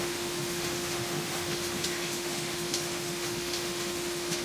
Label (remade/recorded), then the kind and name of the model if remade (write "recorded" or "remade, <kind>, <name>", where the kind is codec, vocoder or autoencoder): remade, autoencoder, DAC-VAE